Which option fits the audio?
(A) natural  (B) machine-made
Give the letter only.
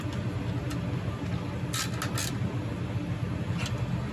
A